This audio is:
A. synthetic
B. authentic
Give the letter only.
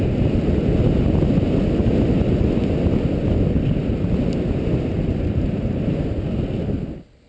B